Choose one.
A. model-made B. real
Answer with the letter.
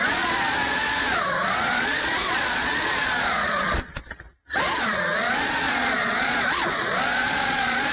A